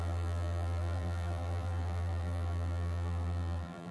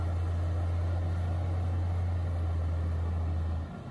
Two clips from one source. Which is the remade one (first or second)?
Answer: first